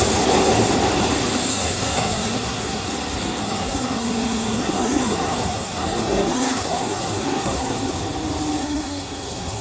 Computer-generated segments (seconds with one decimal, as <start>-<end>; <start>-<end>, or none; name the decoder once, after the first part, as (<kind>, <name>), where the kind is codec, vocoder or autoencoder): 1.5-2.9 (codec, SNAC); 3.4-7.9; 8.6-9.6